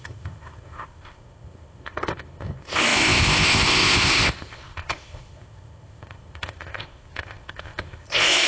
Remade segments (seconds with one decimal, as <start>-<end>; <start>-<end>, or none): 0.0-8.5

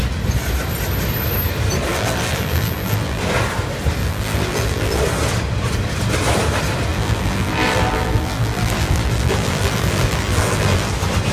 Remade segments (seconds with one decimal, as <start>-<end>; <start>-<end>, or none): 1.9-3.2; 4.0-5.0; 6.9-10.9

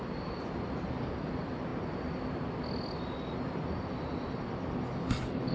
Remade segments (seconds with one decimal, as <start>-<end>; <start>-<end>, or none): none

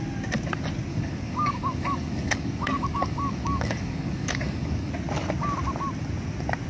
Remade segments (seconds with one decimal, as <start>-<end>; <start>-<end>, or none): 0.9-4.9